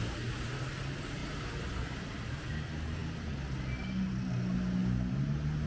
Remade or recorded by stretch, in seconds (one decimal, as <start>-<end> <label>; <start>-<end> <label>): 0.0-5.7 recorded